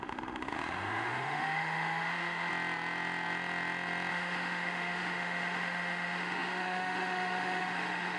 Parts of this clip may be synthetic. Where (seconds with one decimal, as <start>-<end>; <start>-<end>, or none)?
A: 0.0-2.5; 4.1-8.2